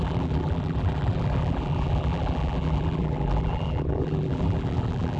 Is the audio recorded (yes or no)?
no